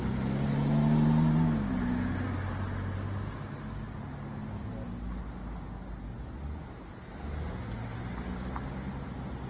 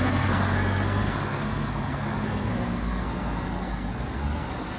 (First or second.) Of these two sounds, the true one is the first